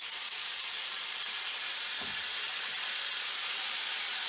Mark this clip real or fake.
real